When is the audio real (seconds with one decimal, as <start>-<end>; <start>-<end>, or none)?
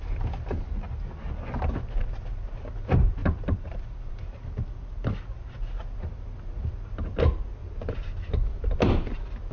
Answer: 0.0-3.2; 4.2-9.5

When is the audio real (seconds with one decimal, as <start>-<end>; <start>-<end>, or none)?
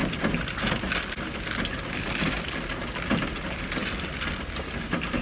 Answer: 0.0-5.2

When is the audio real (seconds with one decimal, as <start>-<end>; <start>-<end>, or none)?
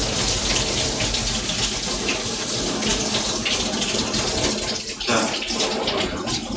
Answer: 0.0-6.6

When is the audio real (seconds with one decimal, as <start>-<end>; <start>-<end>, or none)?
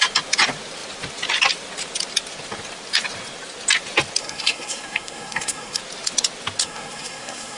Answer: 0.0-4.2; 5.8-6.6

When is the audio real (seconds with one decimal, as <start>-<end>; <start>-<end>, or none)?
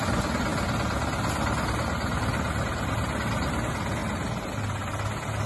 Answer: 0.0-4.0; 4.5-5.5